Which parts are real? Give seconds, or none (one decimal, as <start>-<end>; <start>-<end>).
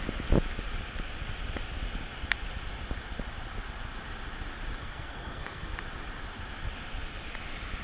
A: 0.0-4.8; 5.7-7.8